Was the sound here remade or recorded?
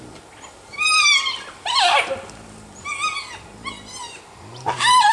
recorded